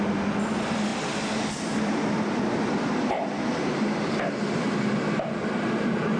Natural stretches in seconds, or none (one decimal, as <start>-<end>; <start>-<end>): 0.0-6.2